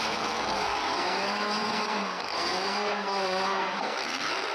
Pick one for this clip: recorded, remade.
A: remade